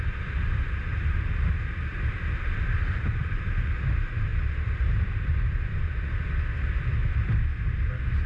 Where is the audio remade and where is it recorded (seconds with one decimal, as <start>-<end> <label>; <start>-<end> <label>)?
0.0-7.0 remade; 7.0-7.6 recorded; 7.6-8.3 remade